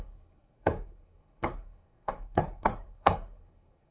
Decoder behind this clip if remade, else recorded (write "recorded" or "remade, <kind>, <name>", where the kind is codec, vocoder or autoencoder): remade, codec, SNAC